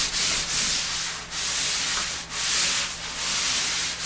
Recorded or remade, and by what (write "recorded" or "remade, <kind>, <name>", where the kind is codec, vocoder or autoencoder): recorded